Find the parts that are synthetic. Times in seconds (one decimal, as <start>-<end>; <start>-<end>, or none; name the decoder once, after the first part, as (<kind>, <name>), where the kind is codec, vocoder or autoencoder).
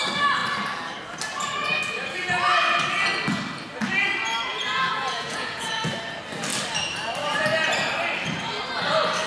4.5-5.9 (vocoder, Vocos)